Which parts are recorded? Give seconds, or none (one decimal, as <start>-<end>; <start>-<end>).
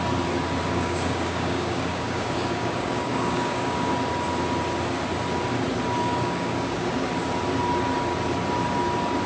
0.0-0.7; 3.9-6.0; 7.1-9.3